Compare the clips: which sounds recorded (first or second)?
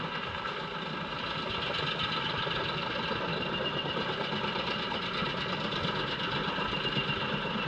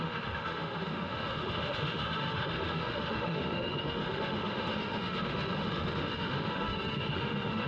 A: first